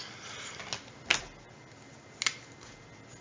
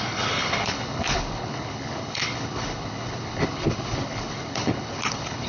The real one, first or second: first